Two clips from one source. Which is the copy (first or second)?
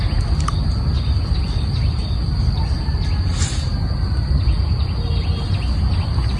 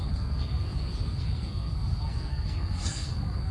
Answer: second